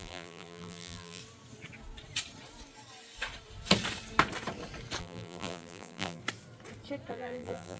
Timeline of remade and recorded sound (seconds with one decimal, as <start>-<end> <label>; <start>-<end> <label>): 0.0-1.2 remade; 1.2-5.0 recorded; 5.0-6.2 remade; 6.2-7.1 recorded; 7.1-7.8 remade